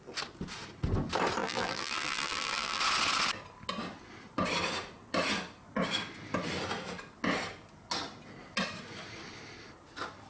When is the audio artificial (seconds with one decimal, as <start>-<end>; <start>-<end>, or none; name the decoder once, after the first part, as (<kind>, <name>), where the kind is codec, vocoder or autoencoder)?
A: 1.4-2.8 (vocoder, BigVGAN v2)

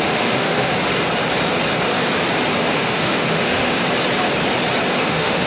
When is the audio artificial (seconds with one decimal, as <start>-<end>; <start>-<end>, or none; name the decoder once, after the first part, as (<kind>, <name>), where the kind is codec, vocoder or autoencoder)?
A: 0.0-0.7 (autoencoder, DAC-VAE); 2.7-3.8; 5.0-5.5

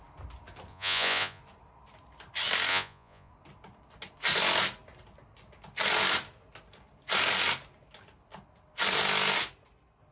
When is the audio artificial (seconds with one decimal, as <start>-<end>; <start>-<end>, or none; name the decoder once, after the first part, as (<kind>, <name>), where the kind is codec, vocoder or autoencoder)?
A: 0.7-1.4 (vocoder, Vocos); 2.7-3.3